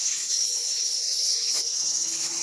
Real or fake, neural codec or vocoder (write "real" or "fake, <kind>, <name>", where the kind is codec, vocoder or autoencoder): fake, codec, HILCodec